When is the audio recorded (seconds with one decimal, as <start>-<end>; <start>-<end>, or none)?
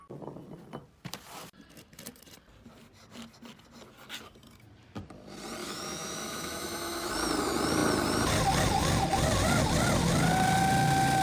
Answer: 0.0-5.6; 7.1-11.2